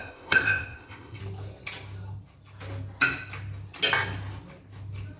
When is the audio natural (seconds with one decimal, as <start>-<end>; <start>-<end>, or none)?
1.2-5.2